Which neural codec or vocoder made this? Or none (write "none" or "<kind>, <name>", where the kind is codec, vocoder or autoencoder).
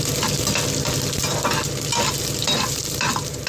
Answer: none